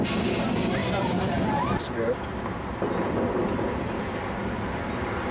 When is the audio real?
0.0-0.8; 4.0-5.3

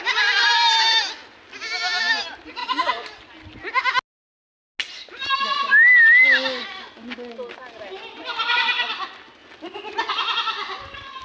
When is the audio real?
1.2-2.0; 2.6-6.6; 9.4-10.1